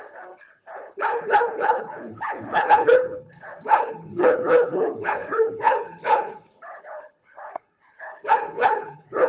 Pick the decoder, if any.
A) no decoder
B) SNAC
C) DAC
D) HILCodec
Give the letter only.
D